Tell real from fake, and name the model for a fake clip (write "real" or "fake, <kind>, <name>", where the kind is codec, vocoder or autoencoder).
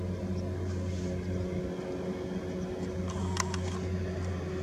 real